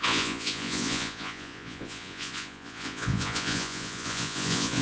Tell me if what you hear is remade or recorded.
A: remade